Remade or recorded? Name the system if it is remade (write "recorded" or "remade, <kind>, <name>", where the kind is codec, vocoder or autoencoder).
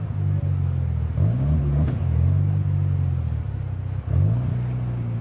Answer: recorded